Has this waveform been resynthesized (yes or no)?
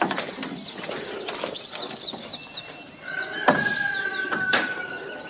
no